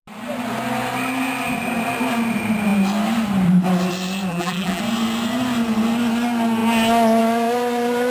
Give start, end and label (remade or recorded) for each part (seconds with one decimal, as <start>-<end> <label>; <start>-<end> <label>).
0.0-4.3 recorded; 4.3-4.8 remade; 4.8-8.1 recorded